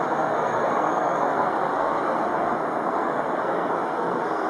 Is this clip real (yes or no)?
no